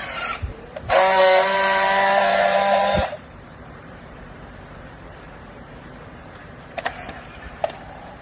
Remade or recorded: remade